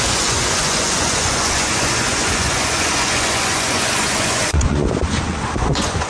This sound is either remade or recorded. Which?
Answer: remade